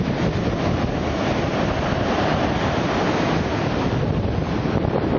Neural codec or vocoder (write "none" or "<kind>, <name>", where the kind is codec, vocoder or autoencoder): none